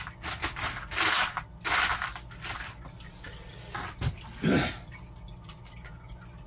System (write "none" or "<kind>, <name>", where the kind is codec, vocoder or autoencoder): none